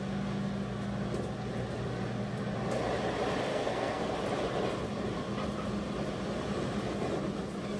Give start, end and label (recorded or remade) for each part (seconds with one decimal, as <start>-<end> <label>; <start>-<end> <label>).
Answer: 0.0-3.5 recorded; 3.5-4.1 remade; 4.1-7.8 recorded